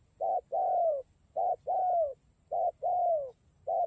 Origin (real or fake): real